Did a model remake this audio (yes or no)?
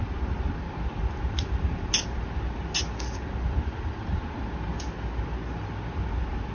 no